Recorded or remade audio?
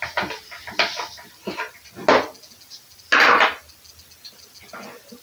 recorded